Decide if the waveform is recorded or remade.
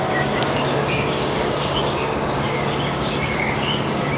remade